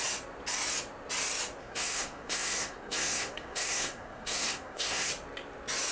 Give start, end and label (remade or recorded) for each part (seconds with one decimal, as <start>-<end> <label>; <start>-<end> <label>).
0.0-1.6 recorded; 1.6-5.1 remade; 5.1-5.9 recorded